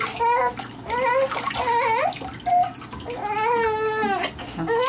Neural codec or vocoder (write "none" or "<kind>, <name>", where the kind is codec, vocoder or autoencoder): none